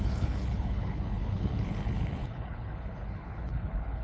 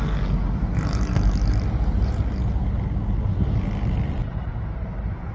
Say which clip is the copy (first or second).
first